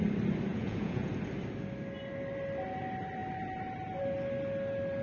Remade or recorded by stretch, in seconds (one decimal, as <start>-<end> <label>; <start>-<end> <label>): 0.0-0.5 recorded; 0.5-1.1 remade; 1.1-5.0 recorded